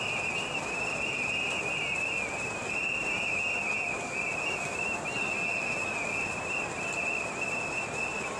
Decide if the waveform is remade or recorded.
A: recorded